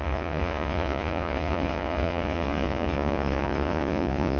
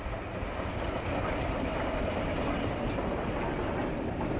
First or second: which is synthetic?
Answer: first